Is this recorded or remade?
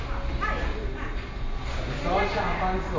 recorded